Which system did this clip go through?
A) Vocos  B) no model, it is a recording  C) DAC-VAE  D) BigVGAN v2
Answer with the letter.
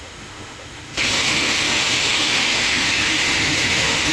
C